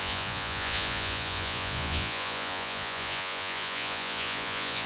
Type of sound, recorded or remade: remade